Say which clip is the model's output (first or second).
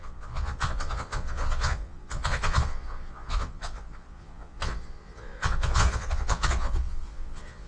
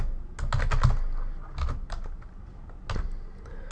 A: first